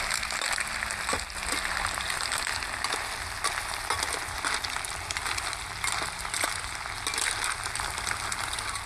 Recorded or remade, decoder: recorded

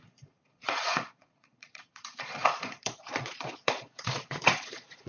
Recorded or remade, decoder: remade, vocoder, Vocos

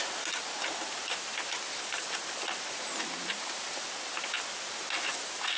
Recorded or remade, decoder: recorded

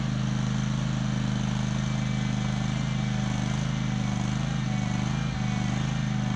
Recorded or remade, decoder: recorded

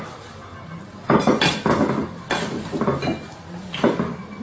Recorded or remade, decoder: recorded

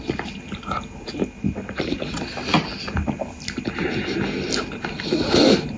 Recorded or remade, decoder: recorded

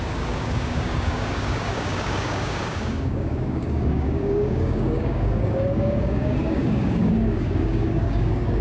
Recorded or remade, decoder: remade, codec, DAC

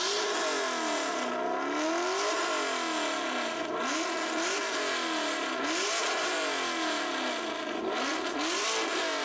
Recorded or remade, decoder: recorded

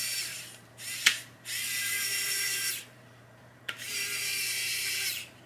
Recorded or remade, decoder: remade, vocoder, BigVGAN v2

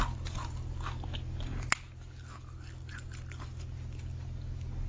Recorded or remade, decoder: recorded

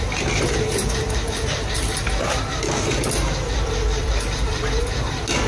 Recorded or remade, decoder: remade, vocoder, BigVGAN v2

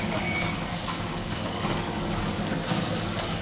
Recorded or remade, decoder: remade, codec, DAC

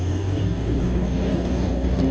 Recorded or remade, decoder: remade, codec, DAC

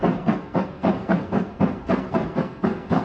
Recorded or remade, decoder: remade, codec, SNAC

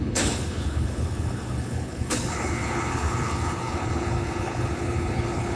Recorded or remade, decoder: remade, codec, HILCodec